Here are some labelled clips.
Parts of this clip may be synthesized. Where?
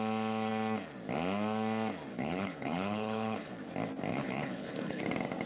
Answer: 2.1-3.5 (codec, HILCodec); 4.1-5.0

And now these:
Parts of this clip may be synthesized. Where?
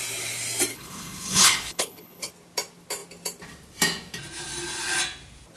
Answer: 0.7-2.3 (codec, HILCodec)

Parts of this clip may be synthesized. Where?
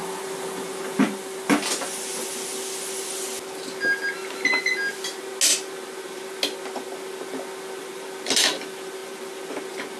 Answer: none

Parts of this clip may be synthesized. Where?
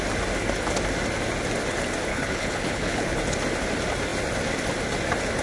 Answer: 2.1-3.2 (codec, HILCodec)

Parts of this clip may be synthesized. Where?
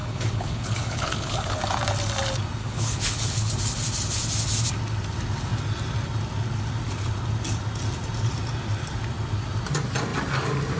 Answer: 0.0-1.6 (codec, HILCodec); 2.6-3.5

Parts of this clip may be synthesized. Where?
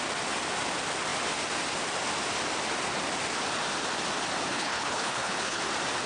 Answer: 4.5-5.6 (codec, HILCodec)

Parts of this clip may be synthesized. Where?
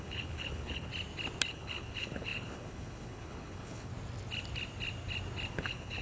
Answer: 0.0-0.9 (codec, HILCodec); 1.5-3.9; 5.5-6.0